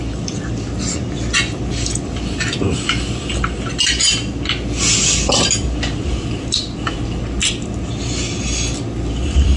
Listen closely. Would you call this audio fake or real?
real